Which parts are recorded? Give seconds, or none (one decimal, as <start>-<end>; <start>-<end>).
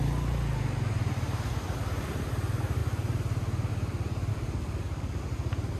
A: 0.0-4.3; 5.2-5.8